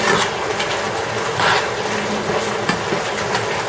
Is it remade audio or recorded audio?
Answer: recorded